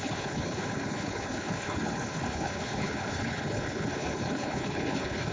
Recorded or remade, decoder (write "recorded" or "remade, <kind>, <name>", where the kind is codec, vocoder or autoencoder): remade, codec, HILCodec